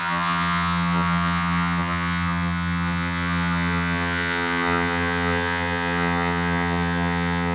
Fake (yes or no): yes